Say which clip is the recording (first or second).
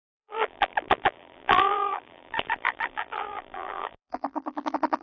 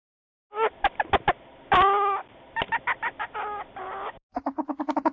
second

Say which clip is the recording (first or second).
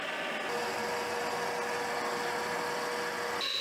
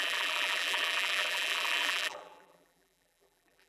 first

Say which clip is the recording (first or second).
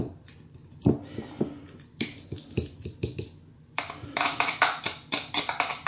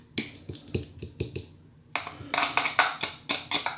second